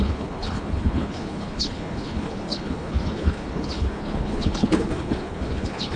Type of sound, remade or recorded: remade